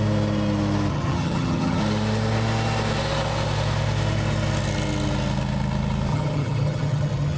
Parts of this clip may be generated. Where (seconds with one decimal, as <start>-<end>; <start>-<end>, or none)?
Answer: 0.9-1.8; 6.1-7.4